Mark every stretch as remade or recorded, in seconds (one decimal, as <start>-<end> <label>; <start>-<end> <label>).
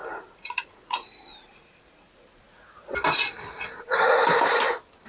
0.0-2.9 remade; 2.9-5.1 recorded